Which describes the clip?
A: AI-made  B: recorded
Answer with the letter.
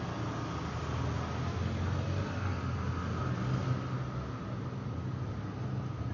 B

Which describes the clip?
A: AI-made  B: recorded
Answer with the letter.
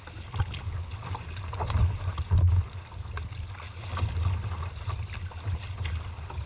B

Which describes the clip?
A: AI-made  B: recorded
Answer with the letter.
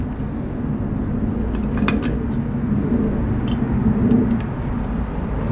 B